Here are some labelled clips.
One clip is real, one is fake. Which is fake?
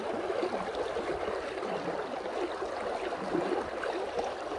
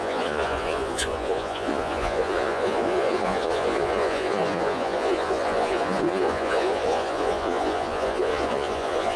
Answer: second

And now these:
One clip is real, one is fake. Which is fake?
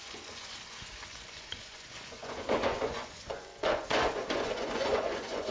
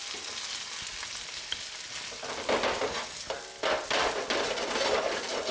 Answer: first